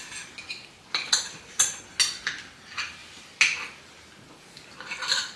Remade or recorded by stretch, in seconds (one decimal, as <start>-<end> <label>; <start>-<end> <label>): 0.0-5.4 recorded